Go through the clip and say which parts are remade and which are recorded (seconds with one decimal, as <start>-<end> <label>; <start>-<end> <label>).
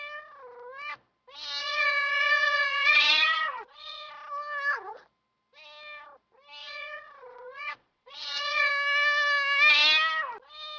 0.0-1.6 recorded; 1.6-4.1 remade; 4.1-6.6 recorded; 6.6-8.7 remade; 8.7-10.8 recorded